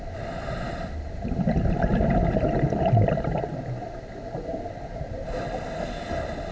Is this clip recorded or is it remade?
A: remade